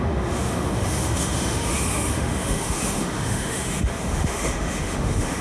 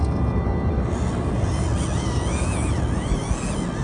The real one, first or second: second